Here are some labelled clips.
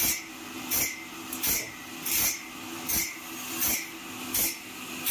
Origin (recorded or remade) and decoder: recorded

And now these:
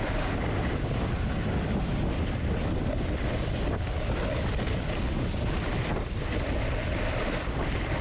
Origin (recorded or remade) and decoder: remade, vocoder, BigVGAN v2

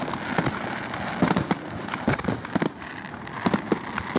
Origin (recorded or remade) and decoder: recorded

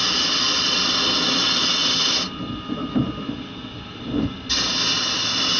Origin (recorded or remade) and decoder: recorded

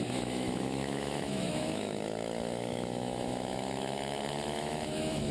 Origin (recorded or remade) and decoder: remade, autoencoder, DAC-VAE